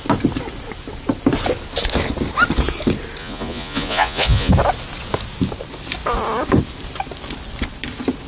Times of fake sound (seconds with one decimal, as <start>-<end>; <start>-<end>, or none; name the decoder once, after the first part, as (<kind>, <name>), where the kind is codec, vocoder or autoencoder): 3.2-4.5 (vocoder, Vocos)